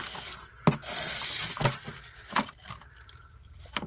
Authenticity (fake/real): fake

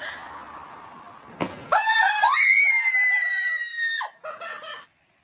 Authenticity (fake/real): real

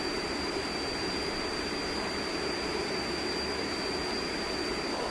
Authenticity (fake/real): real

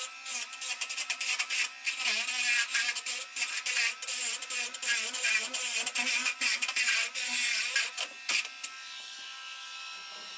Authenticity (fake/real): real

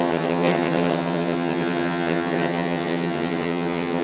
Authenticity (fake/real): fake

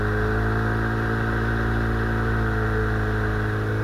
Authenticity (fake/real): real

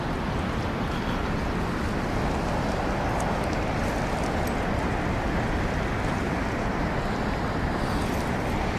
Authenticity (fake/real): real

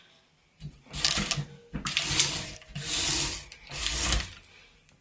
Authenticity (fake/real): real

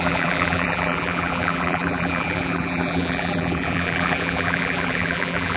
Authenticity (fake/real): fake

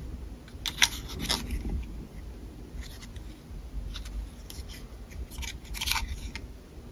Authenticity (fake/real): real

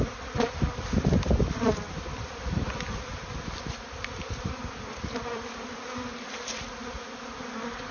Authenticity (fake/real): real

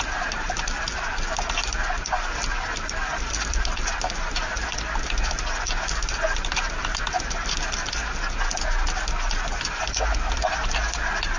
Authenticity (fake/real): real